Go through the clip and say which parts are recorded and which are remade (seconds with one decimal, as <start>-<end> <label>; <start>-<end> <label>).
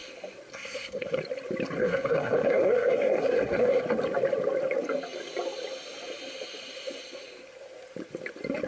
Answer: 0.0-0.5 recorded; 0.5-1.2 remade; 1.2-1.8 recorded; 1.8-3.8 remade; 3.8-8.7 recorded